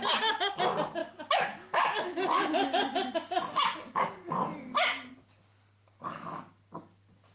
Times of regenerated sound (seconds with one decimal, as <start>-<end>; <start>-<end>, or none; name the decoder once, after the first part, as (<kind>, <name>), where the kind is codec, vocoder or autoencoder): none